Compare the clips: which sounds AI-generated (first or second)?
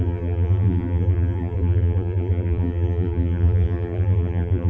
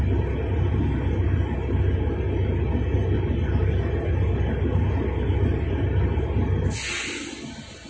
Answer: first